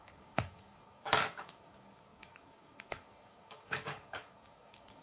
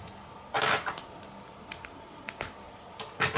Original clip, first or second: second